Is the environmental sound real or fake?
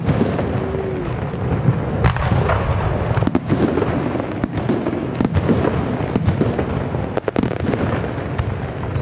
real